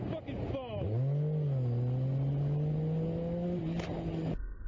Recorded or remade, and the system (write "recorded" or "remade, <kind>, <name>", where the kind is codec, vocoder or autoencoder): recorded